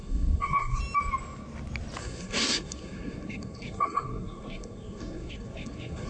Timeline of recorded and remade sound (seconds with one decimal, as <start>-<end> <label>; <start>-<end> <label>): 0.0-0.8 remade; 0.8-2.0 recorded; 2.0-6.1 remade